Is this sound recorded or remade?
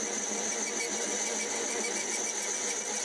recorded